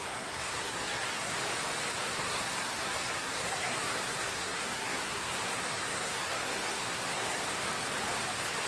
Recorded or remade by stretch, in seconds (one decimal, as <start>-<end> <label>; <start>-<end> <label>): 0.0-1.3 remade; 1.3-2.0 recorded; 2.0-7.4 remade; 7.4-8.7 recorded